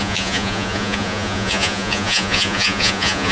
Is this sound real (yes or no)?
no